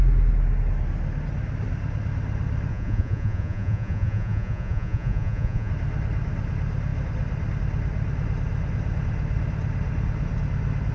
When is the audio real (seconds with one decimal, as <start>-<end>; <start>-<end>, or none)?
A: 0.0-2.7; 5.7-10.9